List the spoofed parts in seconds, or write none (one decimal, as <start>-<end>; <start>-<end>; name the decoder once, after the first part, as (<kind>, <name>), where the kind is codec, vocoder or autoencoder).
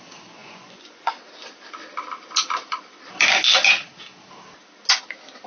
0.4-1.1 (vocoder, Vocos)